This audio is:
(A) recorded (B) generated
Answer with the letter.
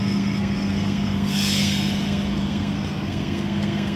B